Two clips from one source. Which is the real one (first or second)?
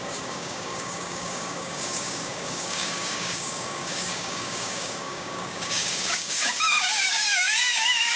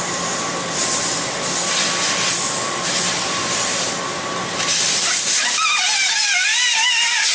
second